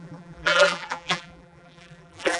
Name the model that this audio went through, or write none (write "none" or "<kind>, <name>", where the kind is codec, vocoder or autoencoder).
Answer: vocoder, BigVGAN v2